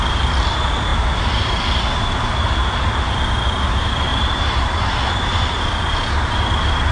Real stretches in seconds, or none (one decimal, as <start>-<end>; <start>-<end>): 0.0-4.1; 4.9-6.9